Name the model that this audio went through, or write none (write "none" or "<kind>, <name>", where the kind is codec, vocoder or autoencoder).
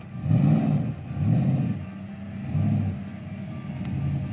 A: none